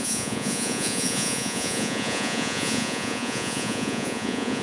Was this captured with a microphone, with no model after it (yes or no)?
no